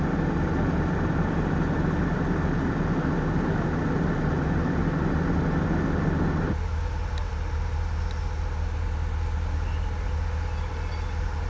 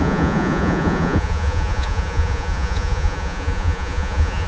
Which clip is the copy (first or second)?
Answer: second